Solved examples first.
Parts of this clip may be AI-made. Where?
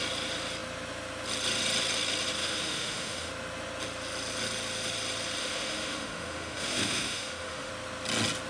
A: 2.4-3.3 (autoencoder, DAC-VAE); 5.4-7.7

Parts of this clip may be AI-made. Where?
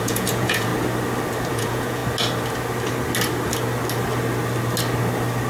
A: 0.0-0.7 (vocoder, Vocos); 1.5-2.0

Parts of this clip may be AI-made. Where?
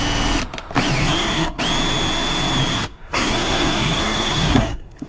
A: 1.0-1.6 (codec, SNAC); 2.7-5.1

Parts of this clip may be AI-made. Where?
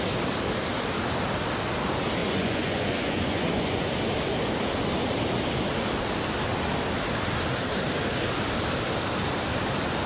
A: 2.2-3.9 (vocoder, Vocos)